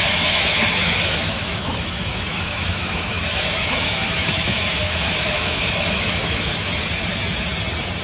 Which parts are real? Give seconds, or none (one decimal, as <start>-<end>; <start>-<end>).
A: 6.7-8.0